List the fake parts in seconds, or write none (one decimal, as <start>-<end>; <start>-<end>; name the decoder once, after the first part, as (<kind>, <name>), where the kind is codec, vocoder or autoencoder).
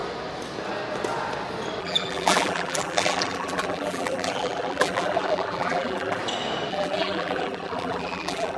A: 1.8-6.2 (vocoder, BigVGAN v2); 6.7-8.6